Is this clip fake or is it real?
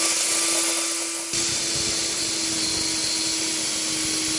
real